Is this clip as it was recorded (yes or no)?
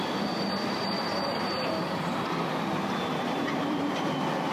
no